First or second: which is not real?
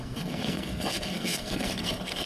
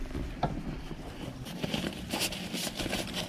first